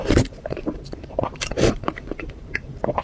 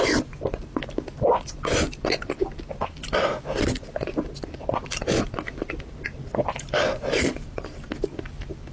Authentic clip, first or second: second